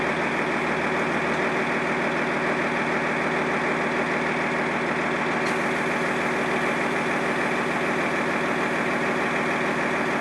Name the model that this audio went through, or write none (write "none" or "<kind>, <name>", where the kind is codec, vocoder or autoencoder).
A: none